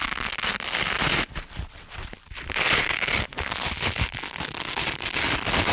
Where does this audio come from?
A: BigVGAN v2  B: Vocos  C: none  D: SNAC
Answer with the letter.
C